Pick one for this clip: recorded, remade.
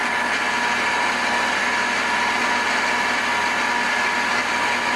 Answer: recorded